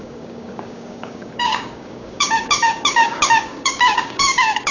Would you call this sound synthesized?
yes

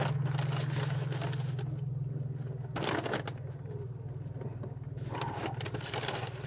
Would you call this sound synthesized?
no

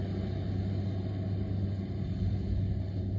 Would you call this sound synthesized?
no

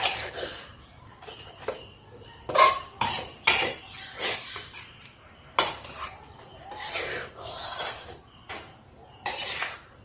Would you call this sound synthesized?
yes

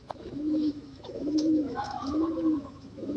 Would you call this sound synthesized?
yes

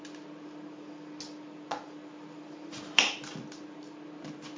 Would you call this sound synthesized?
no